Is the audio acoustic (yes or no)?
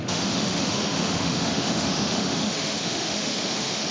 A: no